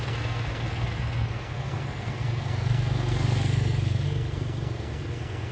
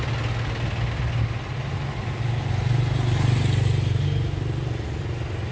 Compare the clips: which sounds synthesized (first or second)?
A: first